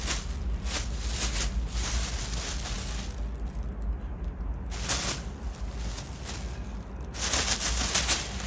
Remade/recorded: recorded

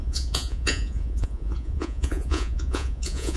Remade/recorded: remade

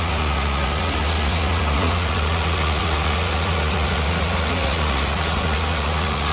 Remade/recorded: remade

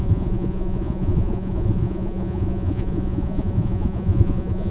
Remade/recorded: remade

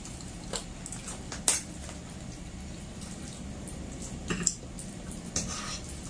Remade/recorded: recorded